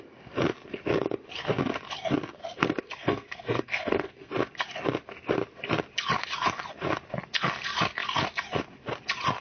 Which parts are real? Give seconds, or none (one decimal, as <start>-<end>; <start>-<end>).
0.0-2.4; 4.3-9.4